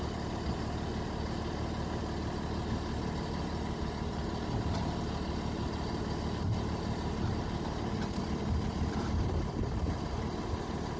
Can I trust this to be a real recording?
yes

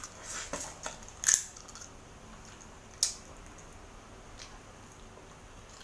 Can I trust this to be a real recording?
yes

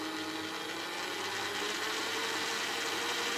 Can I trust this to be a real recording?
yes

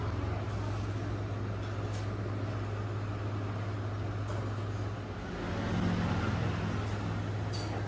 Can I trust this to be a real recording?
yes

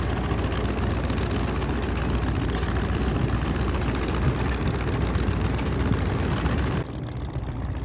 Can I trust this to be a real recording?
yes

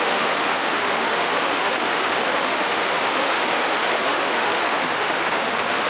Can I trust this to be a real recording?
no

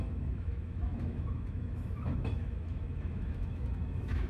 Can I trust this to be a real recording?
no